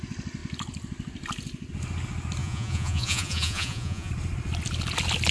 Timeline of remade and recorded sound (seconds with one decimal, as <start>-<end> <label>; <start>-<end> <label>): 0.0-2.4 recorded; 2.4-4.1 remade; 4.1-5.3 recorded